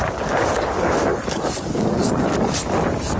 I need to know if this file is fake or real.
fake